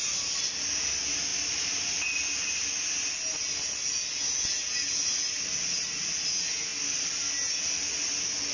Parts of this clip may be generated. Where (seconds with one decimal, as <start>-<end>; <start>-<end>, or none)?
none